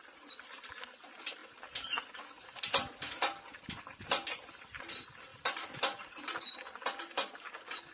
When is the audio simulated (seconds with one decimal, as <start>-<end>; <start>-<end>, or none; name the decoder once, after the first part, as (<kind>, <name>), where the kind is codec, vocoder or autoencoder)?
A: none